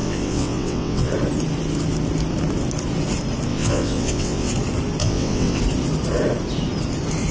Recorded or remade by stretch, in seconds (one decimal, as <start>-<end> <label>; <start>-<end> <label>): 0.0-1.1 remade; 1.1-3.5 recorded; 3.5-4.5 remade; 4.5-5.0 recorded; 5.0-5.6 remade; 5.6-7.3 recorded